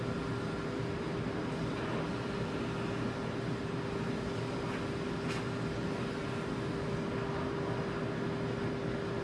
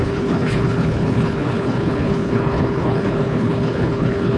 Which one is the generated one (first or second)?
second